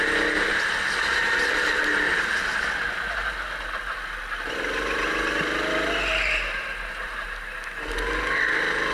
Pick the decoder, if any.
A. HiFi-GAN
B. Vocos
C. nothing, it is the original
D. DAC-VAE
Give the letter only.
C